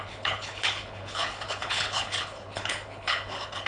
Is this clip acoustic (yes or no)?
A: no